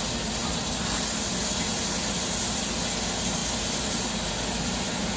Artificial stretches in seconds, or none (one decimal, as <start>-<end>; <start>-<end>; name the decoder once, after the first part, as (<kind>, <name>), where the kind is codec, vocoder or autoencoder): none

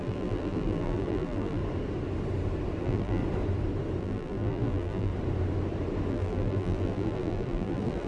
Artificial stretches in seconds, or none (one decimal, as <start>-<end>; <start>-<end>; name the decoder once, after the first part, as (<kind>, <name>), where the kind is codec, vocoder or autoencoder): 0.0-1.6 (vocoder, BigVGAN v2); 2.8-3.2; 4.0-5.1; 6.1-8.1

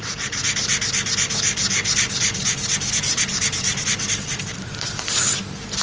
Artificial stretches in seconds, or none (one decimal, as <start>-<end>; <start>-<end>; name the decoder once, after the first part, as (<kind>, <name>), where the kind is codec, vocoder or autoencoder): 0.0-0.4 (vocoder, BigVGAN v2); 2.1-5.8

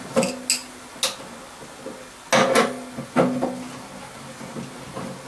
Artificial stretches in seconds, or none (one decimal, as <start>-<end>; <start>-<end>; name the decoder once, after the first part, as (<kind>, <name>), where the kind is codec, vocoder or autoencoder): none

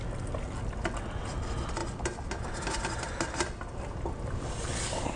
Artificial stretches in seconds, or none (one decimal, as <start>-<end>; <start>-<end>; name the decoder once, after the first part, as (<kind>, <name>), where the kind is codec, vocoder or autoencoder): 0.0-5.2 (vocoder, BigVGAN v2)

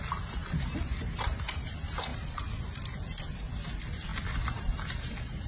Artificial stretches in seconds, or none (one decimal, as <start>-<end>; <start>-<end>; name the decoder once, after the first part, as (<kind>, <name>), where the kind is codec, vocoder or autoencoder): 0.4-1.1 (vocoder, BigVGAN v2); 2.1-3.4

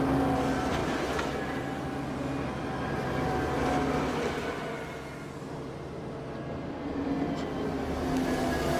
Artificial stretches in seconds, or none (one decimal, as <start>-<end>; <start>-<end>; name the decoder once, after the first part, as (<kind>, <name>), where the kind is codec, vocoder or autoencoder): none

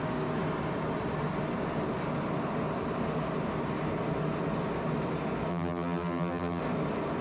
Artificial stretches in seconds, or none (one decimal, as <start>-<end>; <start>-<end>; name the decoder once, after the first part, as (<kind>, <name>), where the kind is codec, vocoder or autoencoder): 5.5-6.6 (vocoder, BigVGAN v2)